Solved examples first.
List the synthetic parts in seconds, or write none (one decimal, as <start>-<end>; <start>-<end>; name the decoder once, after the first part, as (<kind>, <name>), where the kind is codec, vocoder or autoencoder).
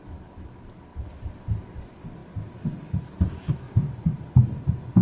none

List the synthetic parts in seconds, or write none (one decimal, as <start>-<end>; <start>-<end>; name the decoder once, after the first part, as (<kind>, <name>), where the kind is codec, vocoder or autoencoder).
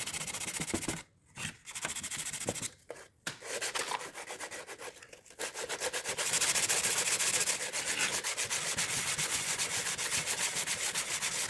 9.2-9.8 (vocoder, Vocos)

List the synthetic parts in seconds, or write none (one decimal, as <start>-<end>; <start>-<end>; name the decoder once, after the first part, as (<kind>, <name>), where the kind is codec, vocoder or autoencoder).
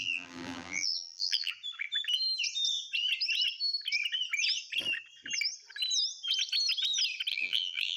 0.0-1.5 (vocoder, BigVGAN v2); 7.3-8.0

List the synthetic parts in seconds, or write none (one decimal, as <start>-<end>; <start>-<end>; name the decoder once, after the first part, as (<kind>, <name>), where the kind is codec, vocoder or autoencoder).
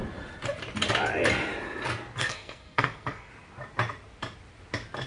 2.2-3.3 (codec, SNAC)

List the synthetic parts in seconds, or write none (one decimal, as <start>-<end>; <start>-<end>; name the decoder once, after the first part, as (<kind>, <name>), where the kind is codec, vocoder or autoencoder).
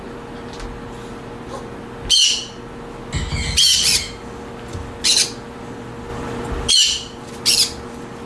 none